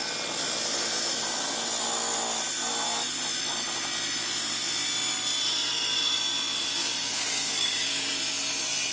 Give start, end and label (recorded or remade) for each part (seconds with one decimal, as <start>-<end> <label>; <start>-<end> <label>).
0.0-6.8 recorded; 6.8-8.2 remade; 8.2-8.9 recorded